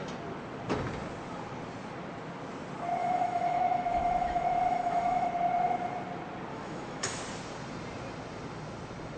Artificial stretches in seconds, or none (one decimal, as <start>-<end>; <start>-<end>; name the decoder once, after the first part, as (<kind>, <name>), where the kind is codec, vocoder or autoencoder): 3.0-5.3 (autoencoder, DAC-VAE); 6.5-7.2